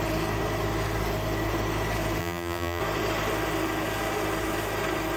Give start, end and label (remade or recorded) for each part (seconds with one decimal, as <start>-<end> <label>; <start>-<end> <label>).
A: 0.0-2.2 recorded; 2.2-2.8 remade; 2.8-5.2 recorded